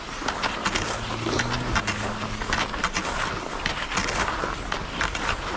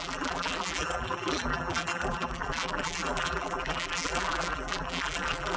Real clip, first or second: first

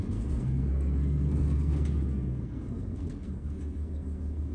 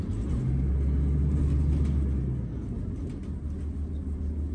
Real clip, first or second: second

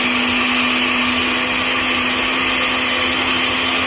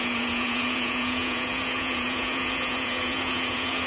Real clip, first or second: first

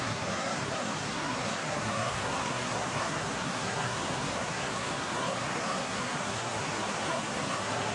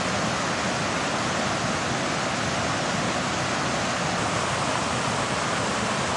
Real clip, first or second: second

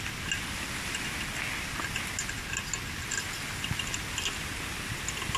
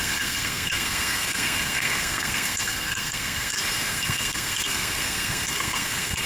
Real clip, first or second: first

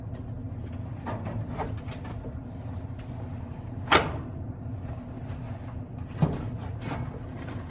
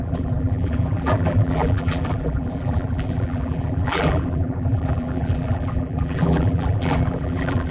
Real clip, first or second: first